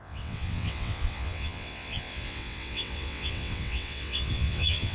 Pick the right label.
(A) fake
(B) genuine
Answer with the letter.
A